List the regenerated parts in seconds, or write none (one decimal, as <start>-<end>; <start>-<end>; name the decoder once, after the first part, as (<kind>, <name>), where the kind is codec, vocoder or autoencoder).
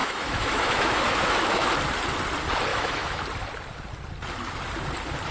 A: 0.0-1.7 (autoencoder, DAC-VAE); 2.7-3.2